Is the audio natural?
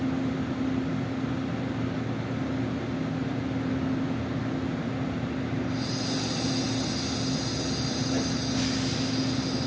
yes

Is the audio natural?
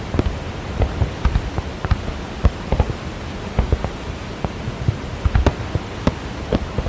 yes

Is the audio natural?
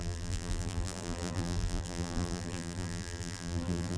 no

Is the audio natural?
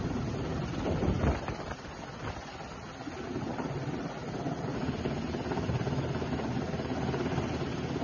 yes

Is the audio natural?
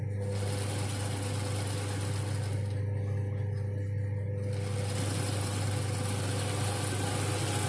yes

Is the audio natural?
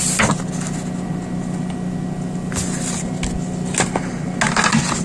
yes